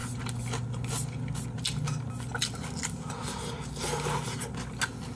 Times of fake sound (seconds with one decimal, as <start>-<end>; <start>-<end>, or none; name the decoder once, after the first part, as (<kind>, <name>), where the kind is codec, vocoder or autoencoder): none